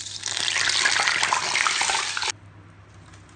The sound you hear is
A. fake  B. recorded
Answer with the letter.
B